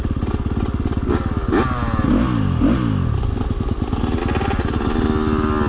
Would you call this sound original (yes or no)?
yes